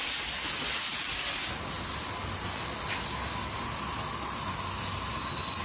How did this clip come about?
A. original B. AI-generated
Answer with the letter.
A